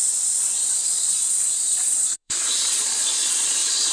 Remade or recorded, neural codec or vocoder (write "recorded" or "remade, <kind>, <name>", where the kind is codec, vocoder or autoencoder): remade, vocoder, Vocos